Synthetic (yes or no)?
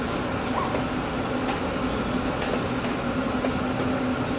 no